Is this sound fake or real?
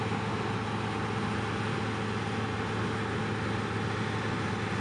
real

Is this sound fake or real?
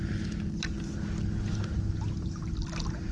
real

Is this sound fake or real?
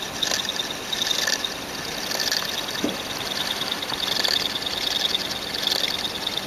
real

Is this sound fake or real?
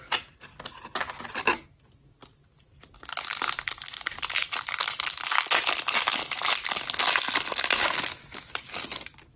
real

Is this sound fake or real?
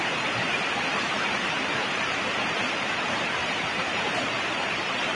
fake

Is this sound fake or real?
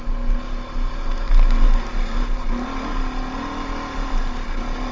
real